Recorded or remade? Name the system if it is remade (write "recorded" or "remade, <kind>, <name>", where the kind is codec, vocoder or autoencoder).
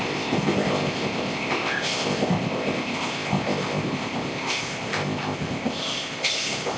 remade, codec, ZipCodec